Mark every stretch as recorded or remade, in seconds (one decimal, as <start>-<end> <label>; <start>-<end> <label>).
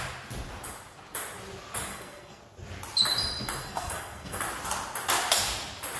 0.0-1.9 recorded; 1.9-2.4 remade; 2.4-3.6 recorded; 3.6-4.4 remade; 4.4-6.0 recorded